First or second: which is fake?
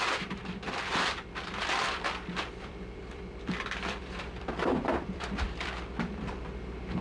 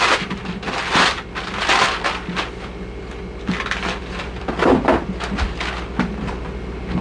first